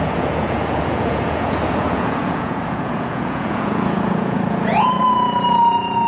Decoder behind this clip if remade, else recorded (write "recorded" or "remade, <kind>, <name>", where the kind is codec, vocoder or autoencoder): remade, vocoder, Vocos